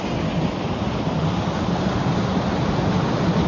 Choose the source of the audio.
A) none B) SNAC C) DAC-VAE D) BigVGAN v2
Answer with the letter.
A